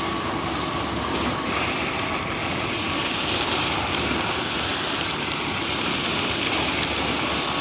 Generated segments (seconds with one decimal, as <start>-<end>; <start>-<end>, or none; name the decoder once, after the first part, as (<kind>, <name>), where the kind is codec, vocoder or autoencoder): 2.4-2.9 (vocoder, Vocos)